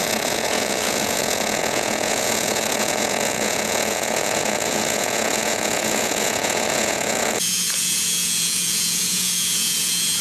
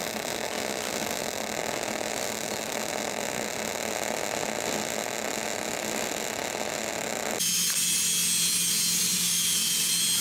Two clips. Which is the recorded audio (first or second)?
second